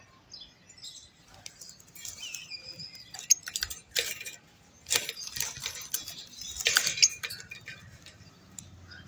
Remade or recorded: recorded